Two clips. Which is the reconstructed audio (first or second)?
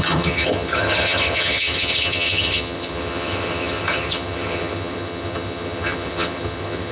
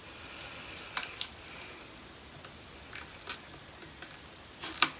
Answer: first